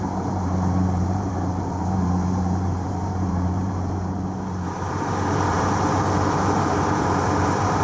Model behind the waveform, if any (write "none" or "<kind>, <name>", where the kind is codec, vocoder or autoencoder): vocoder, BigVGAN v2